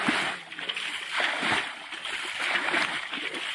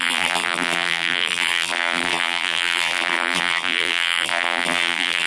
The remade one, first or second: second